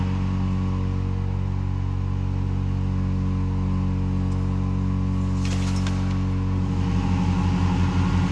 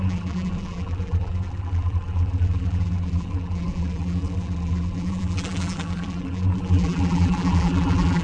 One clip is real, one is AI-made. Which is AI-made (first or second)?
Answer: second